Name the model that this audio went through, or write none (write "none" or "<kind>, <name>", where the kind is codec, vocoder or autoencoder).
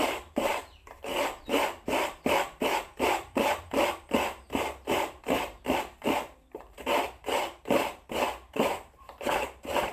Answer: vocoder, BigVGAN v2